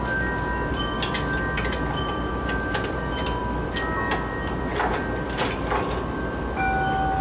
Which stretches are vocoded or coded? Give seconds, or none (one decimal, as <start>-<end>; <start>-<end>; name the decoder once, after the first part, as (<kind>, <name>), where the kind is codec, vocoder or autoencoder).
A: none